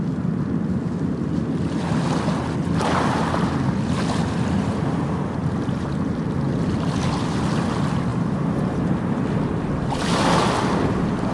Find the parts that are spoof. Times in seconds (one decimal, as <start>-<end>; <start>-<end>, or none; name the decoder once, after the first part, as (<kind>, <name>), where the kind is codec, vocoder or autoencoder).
none